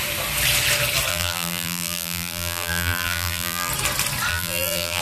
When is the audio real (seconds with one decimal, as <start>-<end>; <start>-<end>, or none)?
0.0-1.1; 3.7-4.3